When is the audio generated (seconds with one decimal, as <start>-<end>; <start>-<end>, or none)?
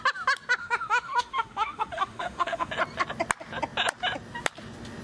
0.6-2.7